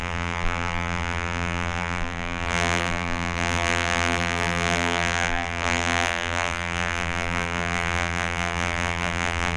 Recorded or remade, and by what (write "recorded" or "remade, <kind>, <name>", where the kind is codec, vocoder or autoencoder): remade, vocoder, BigVGAN v2